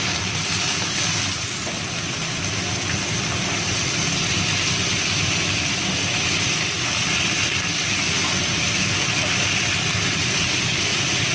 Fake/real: real